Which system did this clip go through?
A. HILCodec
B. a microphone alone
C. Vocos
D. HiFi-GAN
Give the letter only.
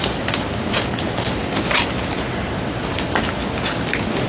B